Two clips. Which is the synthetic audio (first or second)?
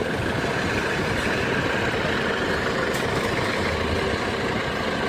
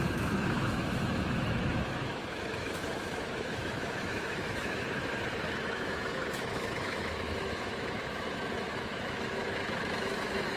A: second